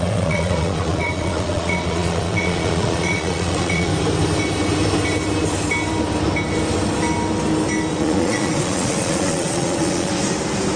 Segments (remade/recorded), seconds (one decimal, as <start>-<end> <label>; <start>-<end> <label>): 0.0-3.9 remade; 3.9-8.0 recorded; 8.0-10.1 remade; 10.1-10.8 recorded